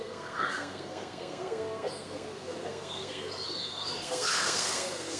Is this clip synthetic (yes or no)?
yes